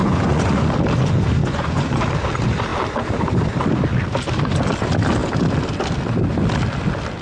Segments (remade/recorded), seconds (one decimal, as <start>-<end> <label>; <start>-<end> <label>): 0.0-0.7 remade; 0.7-1.4 recorded; 1.4-2.0 remade; 2.0-7.2 recorded